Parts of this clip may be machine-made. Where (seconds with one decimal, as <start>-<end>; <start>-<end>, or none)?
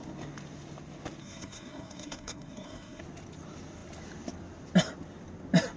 1.2-3.0